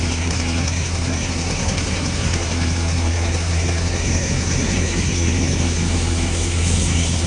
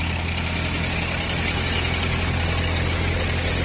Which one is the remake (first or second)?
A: first